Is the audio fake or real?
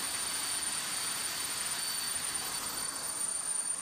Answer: fake